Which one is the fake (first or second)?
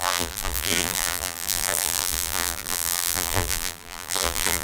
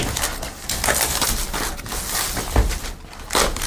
first